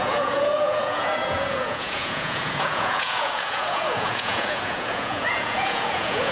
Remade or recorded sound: remade